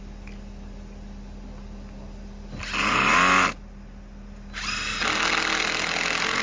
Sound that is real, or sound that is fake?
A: real